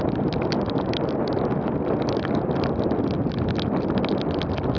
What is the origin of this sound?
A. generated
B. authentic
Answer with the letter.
B